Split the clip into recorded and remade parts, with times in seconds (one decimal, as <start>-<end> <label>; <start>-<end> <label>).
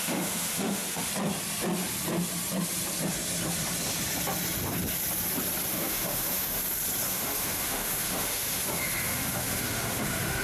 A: 0.0-1.1 remade; 1.1-5.7 recorded; 5.7-6.6 remade; 6.6-7.1 recorded; 7.1-10.4 remade